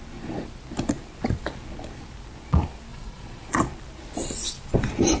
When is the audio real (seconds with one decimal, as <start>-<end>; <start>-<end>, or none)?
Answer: 0.0-2.9; 3.6-5.2